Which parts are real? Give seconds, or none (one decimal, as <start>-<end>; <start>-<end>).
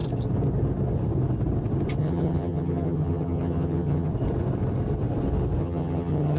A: 0.0-2.0; 4.1-5.6